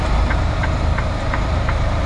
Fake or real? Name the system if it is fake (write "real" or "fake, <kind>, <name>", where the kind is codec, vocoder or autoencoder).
fake, vocoder, BigVGAN v2